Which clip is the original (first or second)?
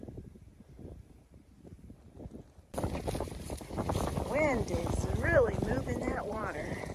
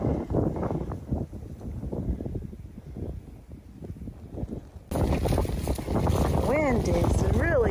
second